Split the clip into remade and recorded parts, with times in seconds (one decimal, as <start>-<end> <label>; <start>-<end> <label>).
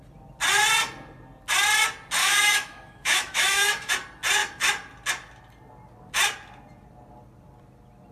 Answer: 0.0-2.2 recorded; 2.2-3.9 remade; 3.9-8.1 recorded